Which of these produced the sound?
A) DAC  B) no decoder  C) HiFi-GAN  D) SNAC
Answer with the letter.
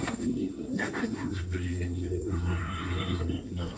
D